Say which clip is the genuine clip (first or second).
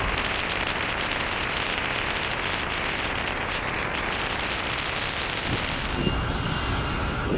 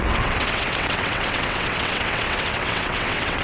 first